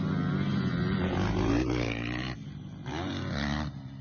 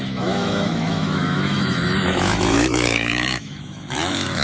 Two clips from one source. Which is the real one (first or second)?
first